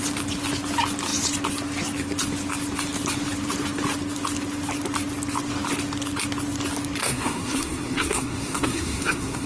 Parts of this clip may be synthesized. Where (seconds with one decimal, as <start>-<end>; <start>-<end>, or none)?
7.0-9.5